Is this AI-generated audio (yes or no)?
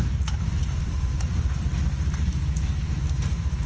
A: no